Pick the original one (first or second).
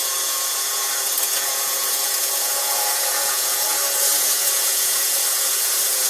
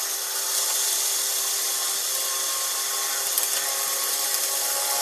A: second